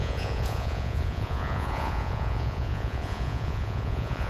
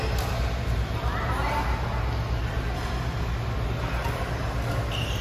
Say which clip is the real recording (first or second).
second